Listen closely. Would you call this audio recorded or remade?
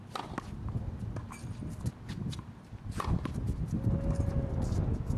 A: recorded